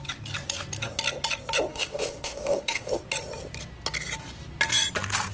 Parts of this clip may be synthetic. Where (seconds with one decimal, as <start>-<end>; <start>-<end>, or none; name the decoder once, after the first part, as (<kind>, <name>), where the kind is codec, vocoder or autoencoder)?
1.7-2.9 (autoencoder, DAC-VAE)